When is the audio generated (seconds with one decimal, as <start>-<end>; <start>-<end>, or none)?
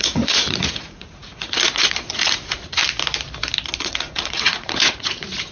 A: 0.0-2.8; 3.8-5.5